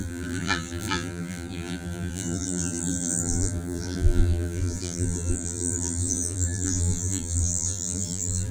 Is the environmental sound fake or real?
fake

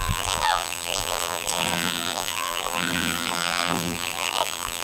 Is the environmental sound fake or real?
fake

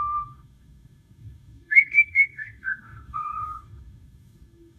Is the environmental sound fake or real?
fake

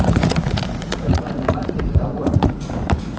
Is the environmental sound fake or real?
fake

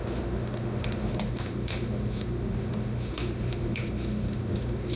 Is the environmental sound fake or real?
fake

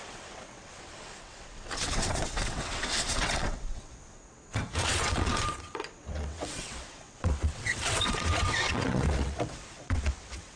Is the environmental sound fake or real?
fake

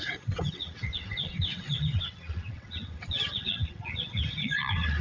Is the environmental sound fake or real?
fake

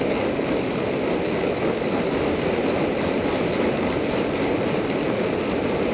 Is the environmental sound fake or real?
real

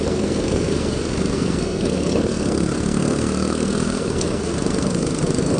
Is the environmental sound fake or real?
fake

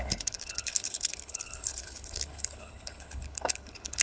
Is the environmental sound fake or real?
fake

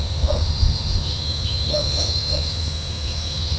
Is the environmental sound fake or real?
fake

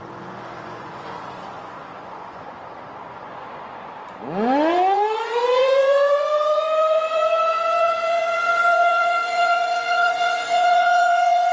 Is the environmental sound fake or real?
fake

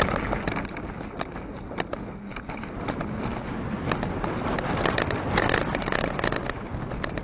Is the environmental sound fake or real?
real